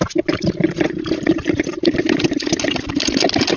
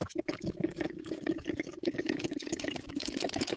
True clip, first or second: first